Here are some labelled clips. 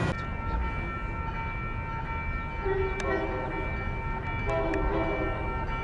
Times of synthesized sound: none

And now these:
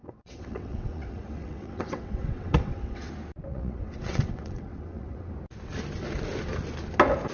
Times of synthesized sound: 0.0-3.1 (vocoder, WaveNeXt); 3.5-5.3

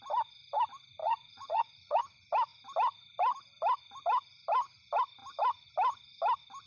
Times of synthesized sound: 1.0-2.0 (vocoder, Vocos)

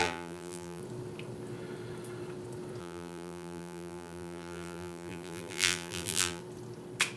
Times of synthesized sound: 0.0-0.8 (vocoder, BigVGAN v2); 2.8-6.4

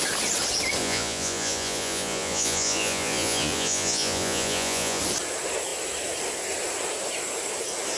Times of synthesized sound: 0.8-5.0 (vocoder, Vocos)

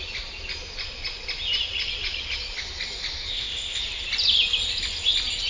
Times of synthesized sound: 3.3-3.8 (codec, ZipCodec)

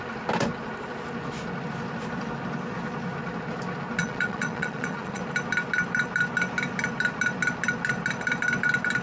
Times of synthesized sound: 4.0-5.2 (vocoder, Vocos)